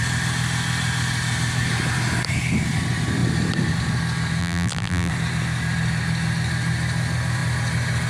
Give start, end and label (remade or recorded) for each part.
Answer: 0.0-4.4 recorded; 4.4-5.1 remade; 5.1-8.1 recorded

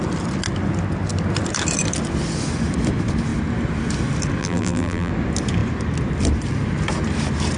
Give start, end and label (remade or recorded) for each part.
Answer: 0.0-4.4 recorded; 4.4-5.1 remade; 5.1-7.6 recorded

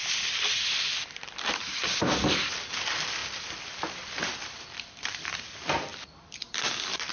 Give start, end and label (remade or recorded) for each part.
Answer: 0.0-7.1 remade

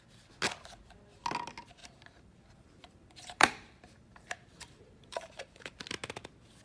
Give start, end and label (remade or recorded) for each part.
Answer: 0.0-1.8 recorded; 1.8-5.8 remade; 5.8-6.6 recorded

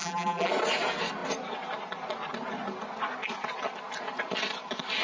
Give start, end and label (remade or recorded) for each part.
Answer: 0.0-0.5 remade; 0.5-5.0 recorded

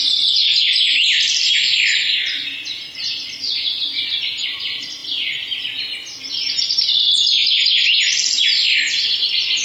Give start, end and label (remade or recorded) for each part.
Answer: 0.0-9.6 recorded

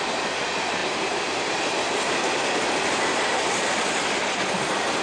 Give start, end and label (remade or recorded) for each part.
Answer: 0.0-5.0 recorded

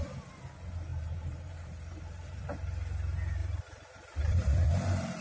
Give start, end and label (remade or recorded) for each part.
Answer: 0.0-0.9 recorded; 0.9-2.4 remade; 2.4-3.4 recorded; 3.4-4.7 remade; 4.7-5.2 recorded